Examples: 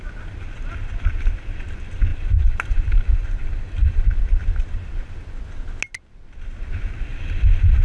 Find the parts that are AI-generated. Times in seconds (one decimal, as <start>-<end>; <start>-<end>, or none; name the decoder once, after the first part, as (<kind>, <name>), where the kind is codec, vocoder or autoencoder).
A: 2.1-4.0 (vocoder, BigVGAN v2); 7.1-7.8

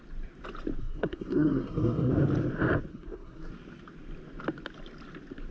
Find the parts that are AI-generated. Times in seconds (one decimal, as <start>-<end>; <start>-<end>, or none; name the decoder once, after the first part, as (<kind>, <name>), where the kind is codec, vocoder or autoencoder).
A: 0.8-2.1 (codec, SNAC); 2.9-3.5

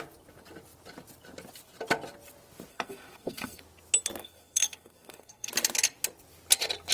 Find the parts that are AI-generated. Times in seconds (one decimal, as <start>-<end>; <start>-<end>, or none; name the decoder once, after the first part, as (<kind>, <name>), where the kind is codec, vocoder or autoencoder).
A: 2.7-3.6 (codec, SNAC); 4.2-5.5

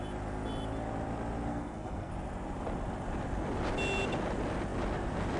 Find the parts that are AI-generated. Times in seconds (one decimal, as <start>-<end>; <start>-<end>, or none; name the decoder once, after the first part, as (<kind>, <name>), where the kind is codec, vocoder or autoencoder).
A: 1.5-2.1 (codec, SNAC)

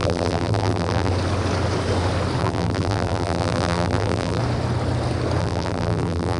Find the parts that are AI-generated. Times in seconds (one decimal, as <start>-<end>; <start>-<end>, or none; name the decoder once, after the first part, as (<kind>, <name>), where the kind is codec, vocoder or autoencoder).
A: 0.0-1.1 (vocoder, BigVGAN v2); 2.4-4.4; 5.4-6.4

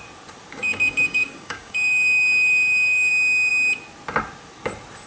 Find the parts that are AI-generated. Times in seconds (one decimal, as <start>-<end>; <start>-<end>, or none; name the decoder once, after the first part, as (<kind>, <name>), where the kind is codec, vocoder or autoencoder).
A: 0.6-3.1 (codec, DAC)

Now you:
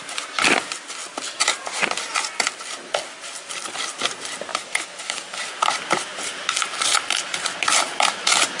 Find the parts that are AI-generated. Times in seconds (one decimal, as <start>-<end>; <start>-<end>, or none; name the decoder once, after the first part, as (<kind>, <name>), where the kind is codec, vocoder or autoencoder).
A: 4.5-5.4 (codec, DAC)

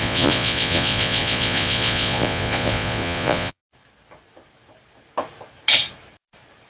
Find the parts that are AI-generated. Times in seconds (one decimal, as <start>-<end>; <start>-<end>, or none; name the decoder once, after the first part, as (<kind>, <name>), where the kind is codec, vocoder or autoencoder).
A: 0.0-3.6 (vocoder, Vocos)